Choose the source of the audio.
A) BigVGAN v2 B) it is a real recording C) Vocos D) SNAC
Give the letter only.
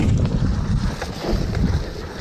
B